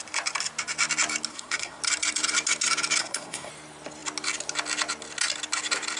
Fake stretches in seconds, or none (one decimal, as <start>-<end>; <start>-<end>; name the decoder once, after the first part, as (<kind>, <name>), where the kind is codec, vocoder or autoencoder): 1.3-1.8 (codec, SNAC); 3.0-3.5